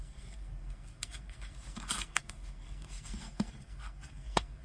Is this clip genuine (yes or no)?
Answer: no